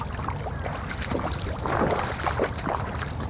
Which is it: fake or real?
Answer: real